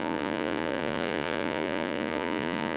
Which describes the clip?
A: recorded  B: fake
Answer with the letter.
B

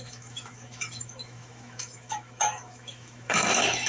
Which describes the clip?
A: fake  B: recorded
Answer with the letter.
A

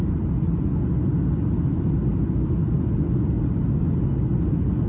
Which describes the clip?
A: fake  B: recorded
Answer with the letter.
B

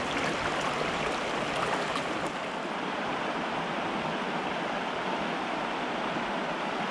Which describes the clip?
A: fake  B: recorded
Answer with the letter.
B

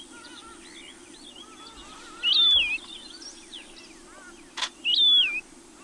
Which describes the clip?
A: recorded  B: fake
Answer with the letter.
A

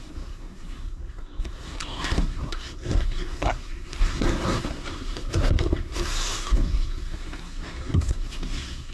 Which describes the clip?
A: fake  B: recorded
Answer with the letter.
A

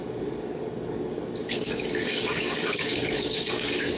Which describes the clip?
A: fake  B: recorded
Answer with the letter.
A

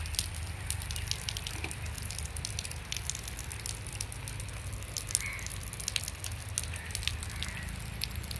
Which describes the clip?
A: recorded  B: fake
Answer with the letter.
A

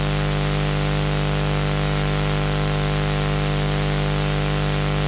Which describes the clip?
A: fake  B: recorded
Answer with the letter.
B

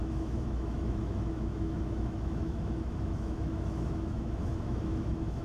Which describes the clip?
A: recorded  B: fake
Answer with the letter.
B